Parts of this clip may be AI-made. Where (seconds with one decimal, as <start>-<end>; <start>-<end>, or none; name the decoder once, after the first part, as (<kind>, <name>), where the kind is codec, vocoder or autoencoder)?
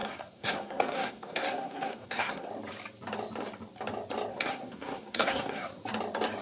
0.0-2.5 (codec, SNAC); 4.3-5.8